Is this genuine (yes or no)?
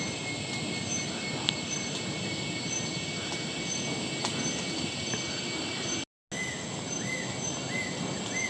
yes